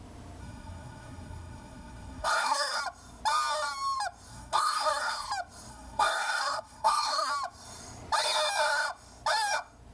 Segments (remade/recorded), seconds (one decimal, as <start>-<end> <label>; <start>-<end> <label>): 0.0-0.4 recorded; 0.4-2.8 remade; 2.8-4.3 recorded; 4.3-5.3 remade; 5.3-5.7 recorded; 5.7-7.3 remade; 7.3-9.9 recorded